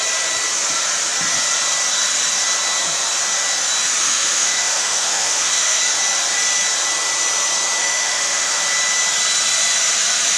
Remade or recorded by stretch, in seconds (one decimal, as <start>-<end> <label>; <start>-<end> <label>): 0.0-4.0 recorded; 4.0-5.8 remade; 5.8-7.8 recorded; 7.8-8.6 remade; 8.6-10.4 recorded